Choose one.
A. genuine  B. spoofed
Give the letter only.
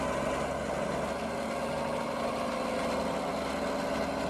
A